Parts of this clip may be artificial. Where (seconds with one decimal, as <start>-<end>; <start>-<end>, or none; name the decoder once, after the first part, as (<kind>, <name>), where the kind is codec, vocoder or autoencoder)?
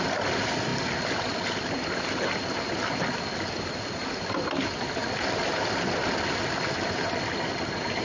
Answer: none